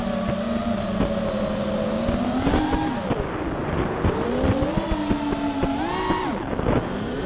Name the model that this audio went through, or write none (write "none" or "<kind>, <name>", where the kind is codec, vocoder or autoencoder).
none